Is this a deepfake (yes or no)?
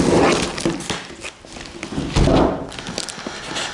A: no